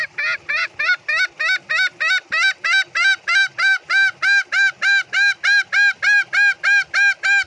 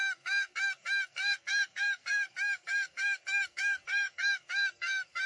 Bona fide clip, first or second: first